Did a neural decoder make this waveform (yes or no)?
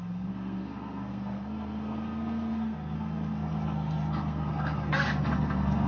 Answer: yes